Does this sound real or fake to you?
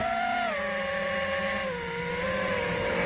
real